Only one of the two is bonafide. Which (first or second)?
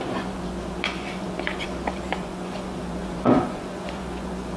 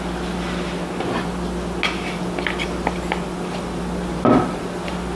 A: second